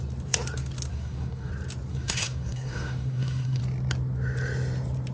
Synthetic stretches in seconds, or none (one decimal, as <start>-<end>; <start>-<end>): 0.9-1.5; 1.9-3.6